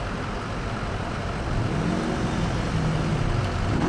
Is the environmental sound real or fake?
real